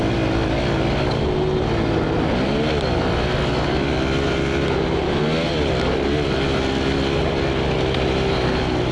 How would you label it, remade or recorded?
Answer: recorded